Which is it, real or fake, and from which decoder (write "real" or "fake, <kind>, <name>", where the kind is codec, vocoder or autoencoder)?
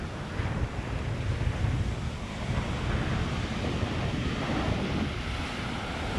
real